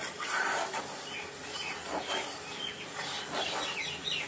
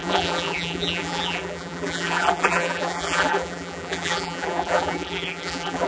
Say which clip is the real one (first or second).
first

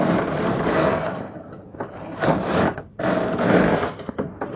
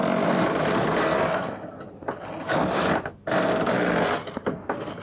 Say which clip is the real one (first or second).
second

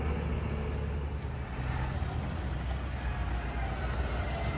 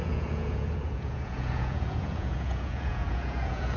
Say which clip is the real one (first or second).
first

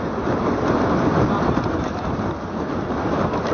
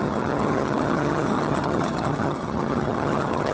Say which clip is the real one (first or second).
first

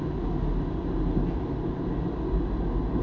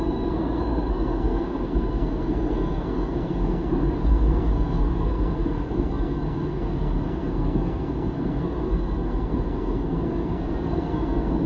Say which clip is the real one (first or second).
first